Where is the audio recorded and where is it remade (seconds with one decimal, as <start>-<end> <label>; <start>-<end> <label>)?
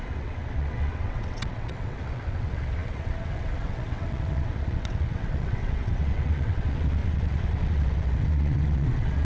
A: 0.0-9.2 remade